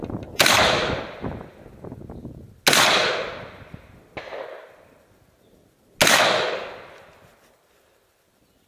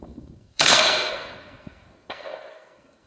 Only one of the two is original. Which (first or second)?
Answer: first